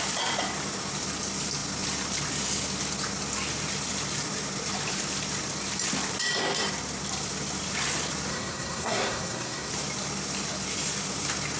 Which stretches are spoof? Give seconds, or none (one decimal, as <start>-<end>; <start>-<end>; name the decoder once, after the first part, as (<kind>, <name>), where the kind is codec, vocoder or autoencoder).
8.3-9.7 (codec, SNAC)